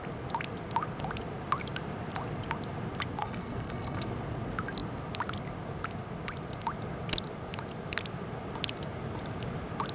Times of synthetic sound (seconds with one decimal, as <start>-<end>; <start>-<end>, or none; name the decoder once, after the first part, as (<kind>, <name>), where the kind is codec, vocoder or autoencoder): 3.2-4.1 (codec, SNAC)